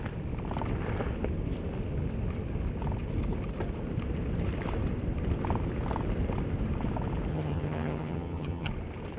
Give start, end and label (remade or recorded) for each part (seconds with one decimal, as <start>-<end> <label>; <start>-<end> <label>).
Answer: 0.0-7.3 recorded; 7.3-8.7 remade; 8.7-9.2 recorded